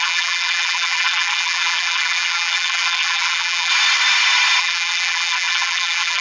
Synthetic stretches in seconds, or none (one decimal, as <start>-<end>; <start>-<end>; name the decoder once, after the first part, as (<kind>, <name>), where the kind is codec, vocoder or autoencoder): 0.0-3.7 (vocoder, BigVGAN v2); 4.6-6.2